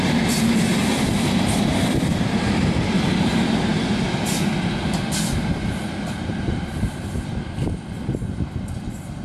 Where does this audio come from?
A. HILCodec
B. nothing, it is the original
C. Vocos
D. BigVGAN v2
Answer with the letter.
B